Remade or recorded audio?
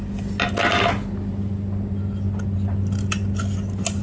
recorded